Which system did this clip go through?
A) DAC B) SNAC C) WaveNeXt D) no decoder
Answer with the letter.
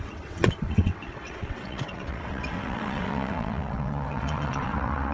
C